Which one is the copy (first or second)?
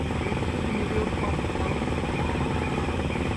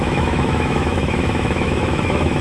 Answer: second